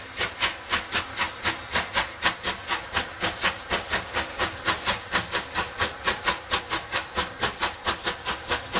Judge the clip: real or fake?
real